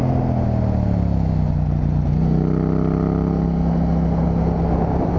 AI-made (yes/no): no